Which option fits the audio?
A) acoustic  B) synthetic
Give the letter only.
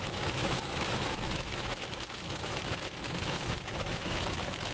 B